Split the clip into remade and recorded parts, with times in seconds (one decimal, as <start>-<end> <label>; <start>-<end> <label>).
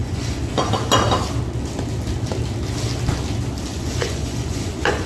0.0-0.7 remade; 0.7-3.7 recorded; 3.7-5.1 remade